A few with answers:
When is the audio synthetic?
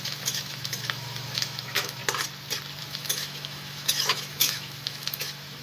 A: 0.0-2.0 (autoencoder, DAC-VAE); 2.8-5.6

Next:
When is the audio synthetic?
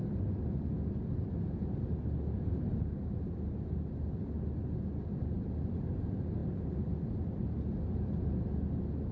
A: none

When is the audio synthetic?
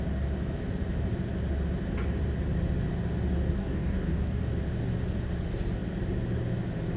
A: 3.6-4.4 (codec, DAC)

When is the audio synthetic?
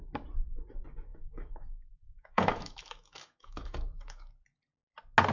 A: 1.1-4.3 (autoencoder, DAC-VAE)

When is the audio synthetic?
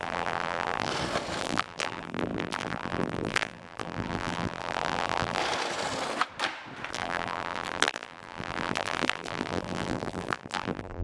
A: 0.0-0.9 (vocoder, BigVGAN v2); 1.4-5.4; 6.9-11.0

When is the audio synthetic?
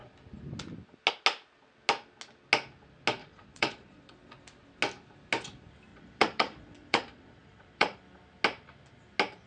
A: 3.2-4.1 (vocoder, Vocos); 5.9-8.0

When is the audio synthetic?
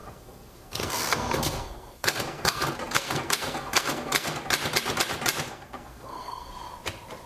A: 0.0-4.4 (codec, SNAC); 5.5-6.5